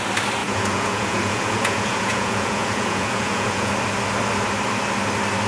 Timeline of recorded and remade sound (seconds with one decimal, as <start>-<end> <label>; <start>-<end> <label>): 0.0-0.4 recorded; 0.4-3.7 remade; 3.7-5.5 recorded